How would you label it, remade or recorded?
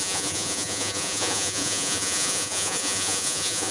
remade